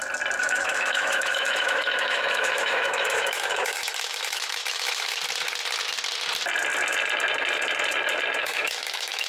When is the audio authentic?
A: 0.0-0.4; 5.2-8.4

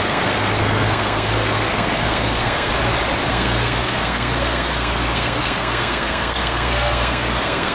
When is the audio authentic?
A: 2.7-3.3

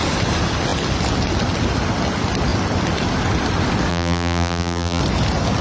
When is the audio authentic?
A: 0.0-3.9; 5.0-5.6

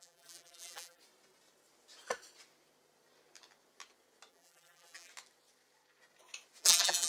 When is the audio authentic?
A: 1.0-4.3; 5.1-6.6

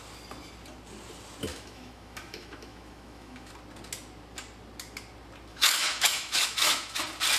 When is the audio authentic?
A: 0.0-1.5; 3.5-5.5; 7.0-7.4